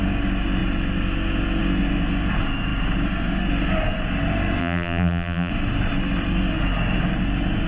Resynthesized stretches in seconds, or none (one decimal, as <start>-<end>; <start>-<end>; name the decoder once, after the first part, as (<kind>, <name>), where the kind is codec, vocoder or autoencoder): 4.6-5.5 (vocoder, BigVGAN v2)